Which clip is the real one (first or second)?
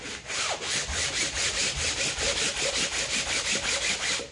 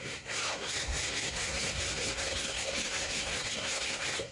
first